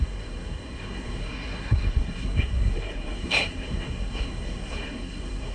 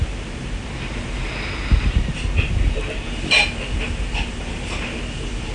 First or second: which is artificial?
first